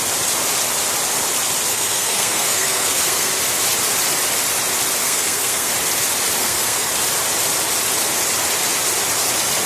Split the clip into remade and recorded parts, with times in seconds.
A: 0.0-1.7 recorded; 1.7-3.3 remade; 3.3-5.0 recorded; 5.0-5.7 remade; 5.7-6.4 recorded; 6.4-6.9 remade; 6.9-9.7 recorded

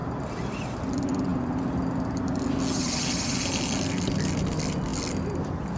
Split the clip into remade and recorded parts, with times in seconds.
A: 0.0-5.8 recorded

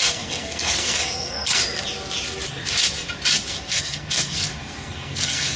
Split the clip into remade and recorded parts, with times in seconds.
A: 0.0-1.6 remade; 1.6-3.5 recorded; 3.5-5.6 remade

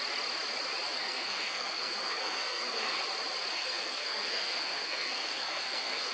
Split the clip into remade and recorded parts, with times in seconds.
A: 0.0-1.0 recorded; 1.0-3.0 remade; 3.0-3.5 recorded; 3.5-6.1 remade

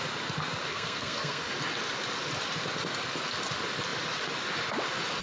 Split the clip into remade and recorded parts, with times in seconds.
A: 0.0-0.7 recorded; 0.7-1.4 remade; 1.4-5.2 recorded

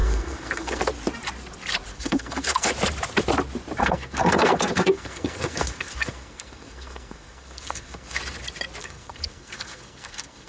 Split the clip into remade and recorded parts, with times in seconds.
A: 0.0-0.8 remade; 0.8-1.9 recorded; 1.9-2.7 remade; 2.7-3.8 recorded; 3.8-8.2 remade; 8.2-8.8 recorded; 8.8-10.5 remade

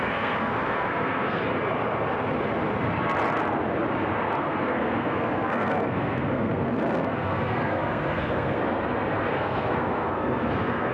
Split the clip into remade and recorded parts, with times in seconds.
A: 0.0-1.4 remade; 1.4-4.4 recorded; 4.4-8.6 remade; 8.6-9.3 recorded; 9.3-10.9 remade

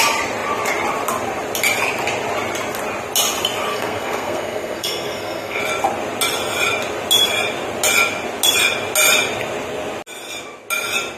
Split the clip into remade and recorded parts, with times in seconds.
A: 0.0-3.7 recorded; 3.7-5.6 remade; 5.6-11.2 recorded